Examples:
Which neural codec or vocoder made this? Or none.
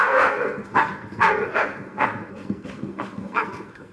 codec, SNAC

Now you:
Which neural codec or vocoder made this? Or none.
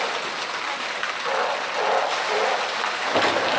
none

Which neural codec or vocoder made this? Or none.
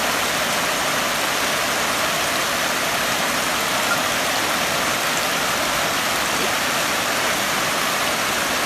none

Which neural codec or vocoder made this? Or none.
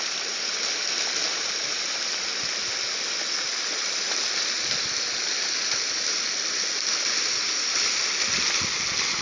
none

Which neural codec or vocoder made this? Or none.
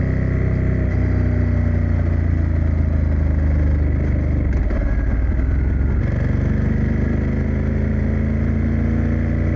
none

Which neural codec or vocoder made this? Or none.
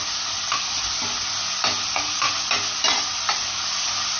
none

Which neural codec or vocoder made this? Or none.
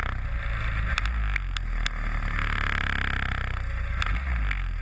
none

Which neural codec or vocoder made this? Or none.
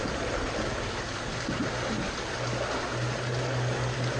none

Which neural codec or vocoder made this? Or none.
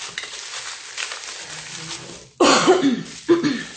none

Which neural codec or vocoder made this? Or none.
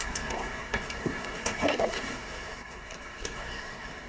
codec, SNAC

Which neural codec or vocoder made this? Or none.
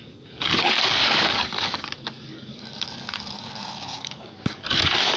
codec, DAC